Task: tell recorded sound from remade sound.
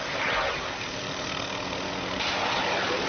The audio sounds recorded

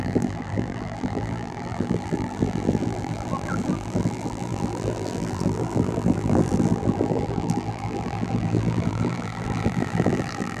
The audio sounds remade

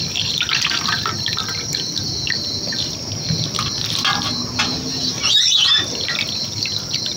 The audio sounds recorded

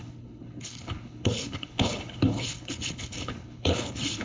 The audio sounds remade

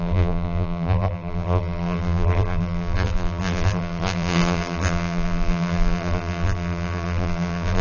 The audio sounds remade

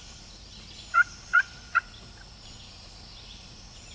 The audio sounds remade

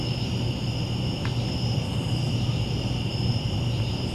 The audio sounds recorded